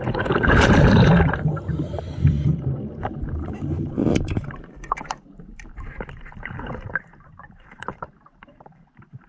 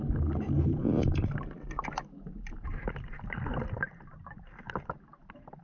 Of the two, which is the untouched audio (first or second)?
second